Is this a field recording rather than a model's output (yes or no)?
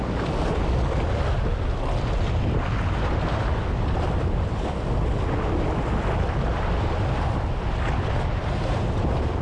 yes